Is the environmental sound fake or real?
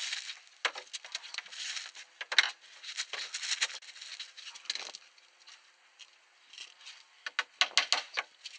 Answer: real